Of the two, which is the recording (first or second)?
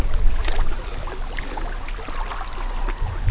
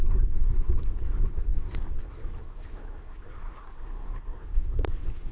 first